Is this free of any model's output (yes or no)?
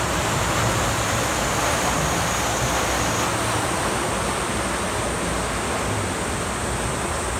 yes